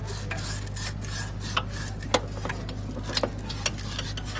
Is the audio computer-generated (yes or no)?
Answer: no